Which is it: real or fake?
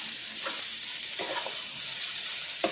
real